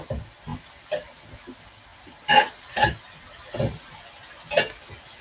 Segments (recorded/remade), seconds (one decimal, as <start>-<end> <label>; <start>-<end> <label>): 0.0-0.5 recorded; 0.5-1.2 remade; 1.2-5.2 recorded